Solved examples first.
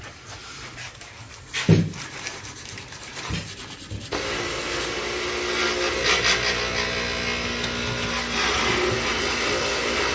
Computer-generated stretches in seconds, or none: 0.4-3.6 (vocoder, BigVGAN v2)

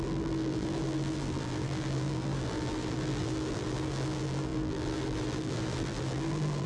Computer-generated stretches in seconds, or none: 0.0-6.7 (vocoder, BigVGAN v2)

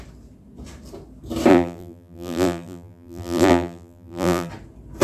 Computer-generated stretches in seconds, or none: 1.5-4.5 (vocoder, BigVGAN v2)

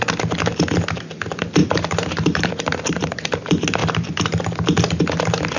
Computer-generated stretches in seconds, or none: 1.6-3.3 (vocoder, BigVGAN v2)

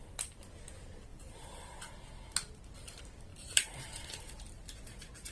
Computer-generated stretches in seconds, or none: 3.3-3.8 (vocoder, BigVGAN v2)

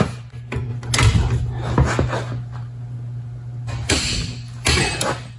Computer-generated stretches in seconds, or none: none

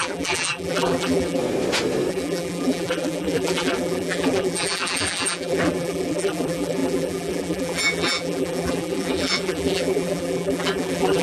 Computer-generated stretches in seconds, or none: 0.0-1.4 (vocoder, BigVGAN v2); 2.1-11.2

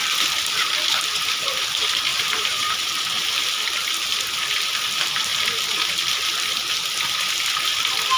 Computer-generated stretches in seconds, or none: 2.1-3.3 (vocoder, BigVGAN v2)